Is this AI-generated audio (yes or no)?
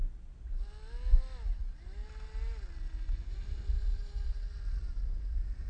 no